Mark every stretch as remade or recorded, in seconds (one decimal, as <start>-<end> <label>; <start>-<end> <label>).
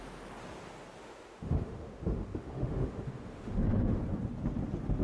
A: 0.0-1.0 recorded; 1.0-4.0 remade; 4.0-5.0 recorded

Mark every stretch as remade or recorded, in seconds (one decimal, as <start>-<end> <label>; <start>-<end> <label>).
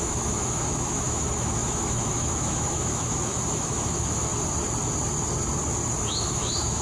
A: 0.0-4.3 remade; 4.3-6.1 recorded; 6.1-6.8 remade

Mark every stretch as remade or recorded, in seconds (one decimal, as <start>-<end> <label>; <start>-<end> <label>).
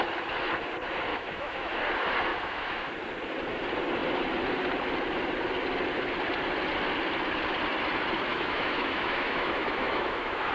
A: 0.0-1.1 recorded; 1.1-1.8 remade; 1.8-2.3 recorded; 2.3-2.9 remade; 2.9-8.3 recorded; 8.3-10.5 remade